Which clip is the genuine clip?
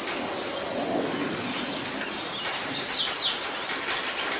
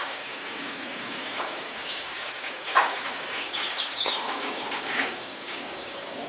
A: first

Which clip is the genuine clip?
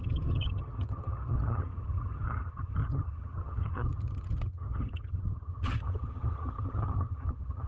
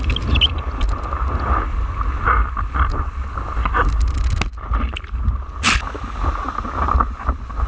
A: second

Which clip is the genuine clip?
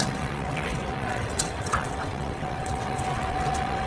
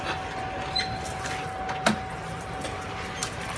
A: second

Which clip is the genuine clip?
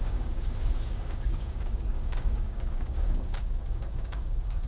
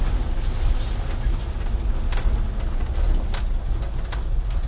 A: second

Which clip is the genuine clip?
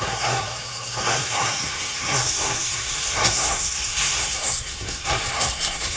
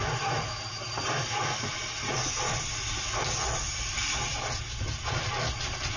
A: second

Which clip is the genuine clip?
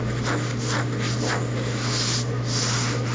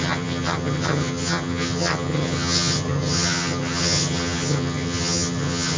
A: first